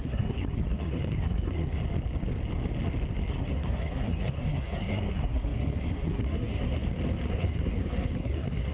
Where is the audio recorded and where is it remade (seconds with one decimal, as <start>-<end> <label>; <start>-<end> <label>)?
0.0-1.8 remade; 1.8-3.3 recorded; 3.3-6.8 remade; 6.8-7.3 recorded; 7.3-8.7 remade